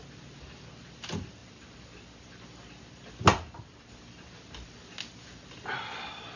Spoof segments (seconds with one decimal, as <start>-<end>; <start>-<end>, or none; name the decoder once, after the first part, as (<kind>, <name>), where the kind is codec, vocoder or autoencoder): none